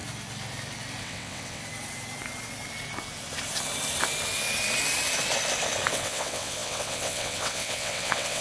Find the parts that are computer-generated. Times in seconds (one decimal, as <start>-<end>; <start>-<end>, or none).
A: 1.0-1.6; 5.9-8.4